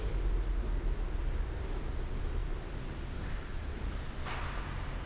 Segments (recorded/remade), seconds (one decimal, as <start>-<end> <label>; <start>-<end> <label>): 0.0-5.1 recorded